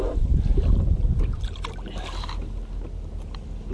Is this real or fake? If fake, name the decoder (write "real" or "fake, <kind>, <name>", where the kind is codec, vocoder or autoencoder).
real